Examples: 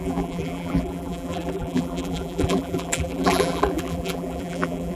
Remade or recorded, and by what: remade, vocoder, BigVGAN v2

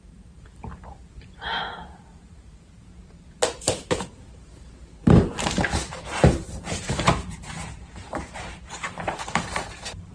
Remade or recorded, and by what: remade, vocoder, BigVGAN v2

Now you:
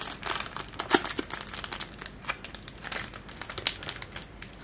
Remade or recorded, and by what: recorded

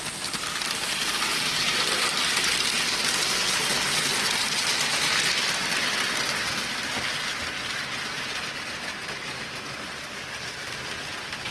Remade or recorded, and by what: recorded